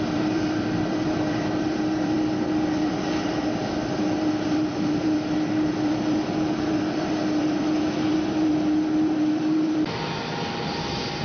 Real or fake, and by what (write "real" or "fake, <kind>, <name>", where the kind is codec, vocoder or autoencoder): fake, vocoder, BigVGAN v2